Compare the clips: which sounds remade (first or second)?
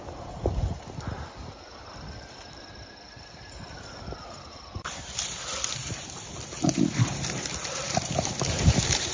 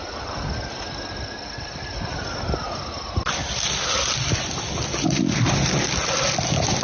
first